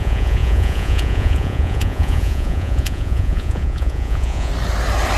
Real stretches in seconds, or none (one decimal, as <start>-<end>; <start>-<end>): 4.5-5.2